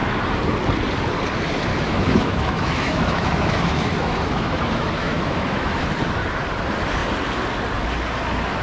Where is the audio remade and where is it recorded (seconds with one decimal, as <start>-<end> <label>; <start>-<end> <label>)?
0.0-1.7 recorded; 1.7-5.8 remade; 5.8-8.6 recorded